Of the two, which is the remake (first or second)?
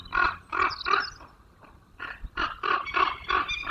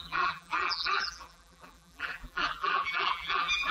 second